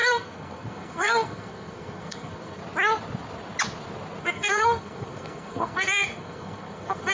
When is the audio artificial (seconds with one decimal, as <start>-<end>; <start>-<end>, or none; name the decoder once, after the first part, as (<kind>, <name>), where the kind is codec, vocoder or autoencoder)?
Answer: 0.0-2.6 (codec, SNAC); 4.2-7.1